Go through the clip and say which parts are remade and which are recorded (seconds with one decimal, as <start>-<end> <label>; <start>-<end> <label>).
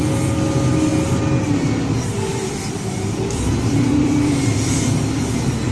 0.0-2.3 recorded; 2.3-5.7 remade